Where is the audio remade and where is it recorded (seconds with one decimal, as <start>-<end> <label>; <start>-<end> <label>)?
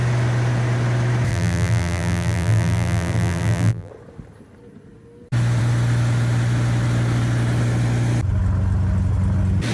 0.0-1.3 recorded; 1.3-3.9 remade; 3.9-9.7 recorded